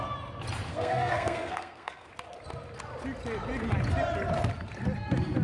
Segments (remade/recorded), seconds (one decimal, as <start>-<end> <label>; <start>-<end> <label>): 0.0-0.7 recorded; 0.7-2.1 remade; 2.1-5.4 recorded